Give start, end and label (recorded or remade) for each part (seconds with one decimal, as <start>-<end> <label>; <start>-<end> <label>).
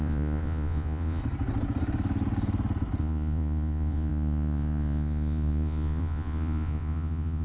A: 0.0-1.2 remade; 1.2-3.0 recorded; 3.0-7.4 remade